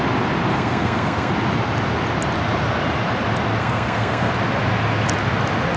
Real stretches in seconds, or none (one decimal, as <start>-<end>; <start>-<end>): 0.0-0.5; 1.3-3.6; 4.3-5.8